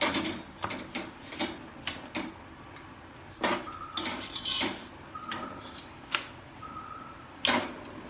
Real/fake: real